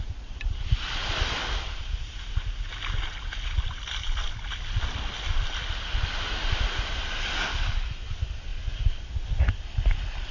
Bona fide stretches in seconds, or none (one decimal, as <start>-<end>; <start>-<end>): 0.0-10.3